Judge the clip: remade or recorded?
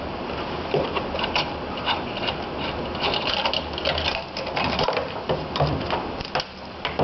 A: recorded